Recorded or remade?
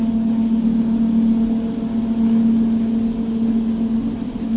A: recorded